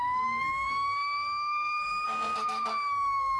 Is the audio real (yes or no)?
no